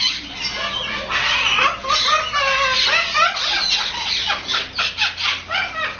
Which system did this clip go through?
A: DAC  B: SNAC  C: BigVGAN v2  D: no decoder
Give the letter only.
D